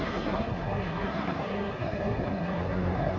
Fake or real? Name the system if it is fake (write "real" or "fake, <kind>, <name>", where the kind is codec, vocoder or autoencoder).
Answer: fake, codec, SNAC